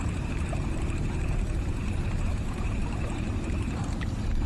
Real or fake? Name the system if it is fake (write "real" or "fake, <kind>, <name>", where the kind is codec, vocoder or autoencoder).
fake, vocoder, BigVGAN v2